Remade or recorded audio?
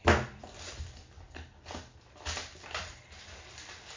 recorded